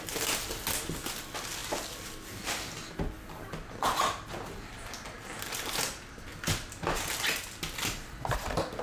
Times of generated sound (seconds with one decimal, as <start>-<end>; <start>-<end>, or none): none